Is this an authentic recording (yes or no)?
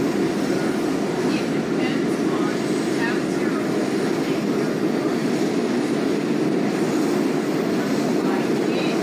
yes